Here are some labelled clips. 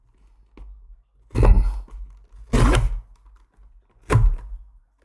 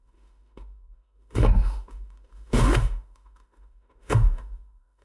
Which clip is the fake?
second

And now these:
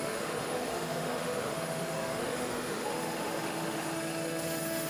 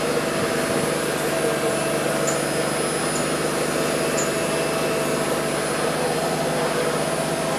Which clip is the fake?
first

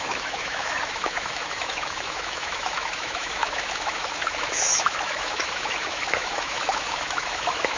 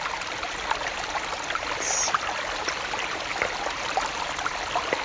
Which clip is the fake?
first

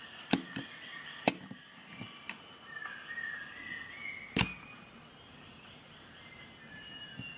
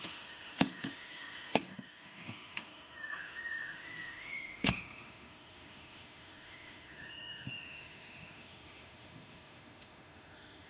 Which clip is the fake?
second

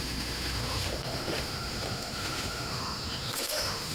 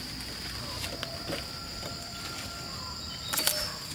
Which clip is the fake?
first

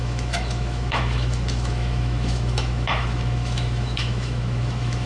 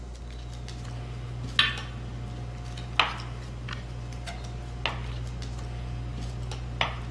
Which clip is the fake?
first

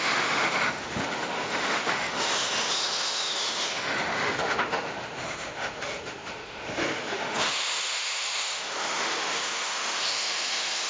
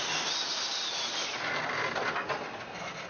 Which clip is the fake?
first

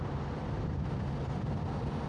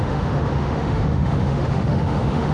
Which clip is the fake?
second